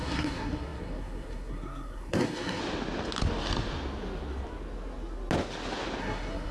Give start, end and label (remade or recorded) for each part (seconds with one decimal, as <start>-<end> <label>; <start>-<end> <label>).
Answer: 0.0-2.6 remade; 2.6-6.0 recorded; 6.0-6.5 remade

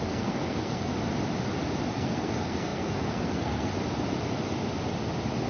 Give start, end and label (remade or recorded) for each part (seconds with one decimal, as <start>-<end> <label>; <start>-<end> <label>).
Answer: 0.0-0.9 remade; 0.9-1.9 recorded; 1.9-3.7 remade; 3.7-5.5 recorded